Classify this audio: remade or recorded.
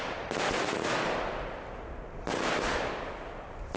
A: recorded